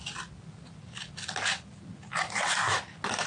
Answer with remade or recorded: recorded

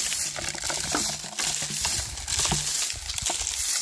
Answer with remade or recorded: recorded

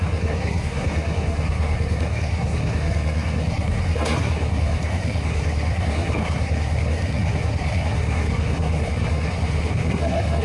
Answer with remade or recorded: remade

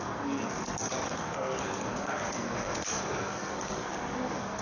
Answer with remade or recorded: remade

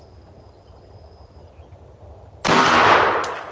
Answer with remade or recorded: recorded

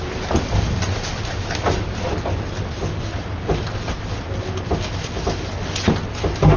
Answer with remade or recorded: recorded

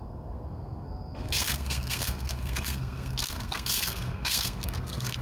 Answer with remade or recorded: remade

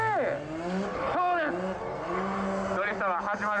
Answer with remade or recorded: recorded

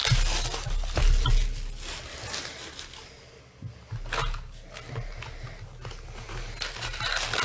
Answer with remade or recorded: recorded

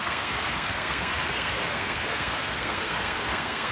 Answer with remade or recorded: remade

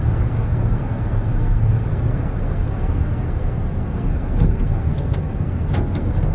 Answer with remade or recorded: remade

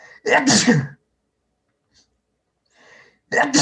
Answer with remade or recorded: recorded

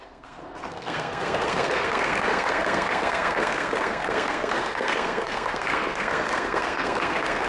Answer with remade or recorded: remade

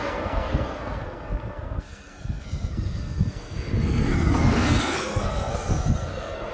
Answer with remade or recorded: remade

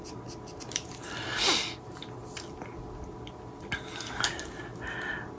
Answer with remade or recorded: recorded